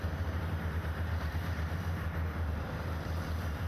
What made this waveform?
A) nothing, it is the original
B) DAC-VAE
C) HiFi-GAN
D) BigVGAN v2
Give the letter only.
D